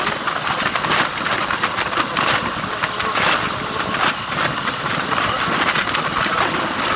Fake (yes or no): no